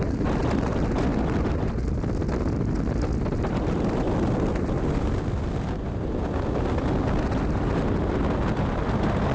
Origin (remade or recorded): recorded